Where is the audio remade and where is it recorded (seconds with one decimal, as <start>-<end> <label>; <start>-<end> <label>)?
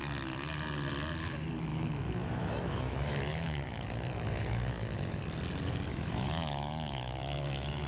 0.0-1.7 recorded; 1.7-5.2 remade; 5.2-5.9 recorded; 5.9-7.9 remade